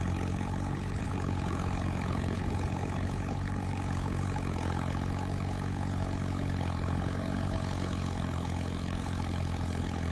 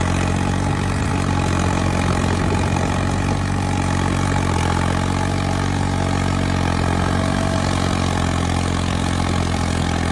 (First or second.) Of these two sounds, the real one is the second